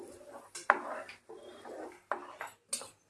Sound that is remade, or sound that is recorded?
recorded